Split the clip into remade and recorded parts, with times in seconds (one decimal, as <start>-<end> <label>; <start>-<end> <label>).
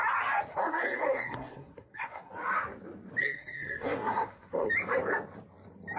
0.0-0.5 recorded; 0.5-2.3 remade; 2.3-3.2 recorded; 3.2-4.7 remade; 4.7-6.0 recorded